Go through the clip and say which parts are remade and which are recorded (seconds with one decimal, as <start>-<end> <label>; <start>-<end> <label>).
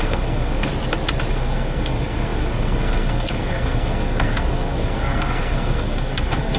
0.0-0.7 remade; 0.7-1.3 recorded; 1.3-6.6 remade